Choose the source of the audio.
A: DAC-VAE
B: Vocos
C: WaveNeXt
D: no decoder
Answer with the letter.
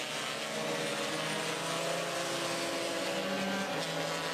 D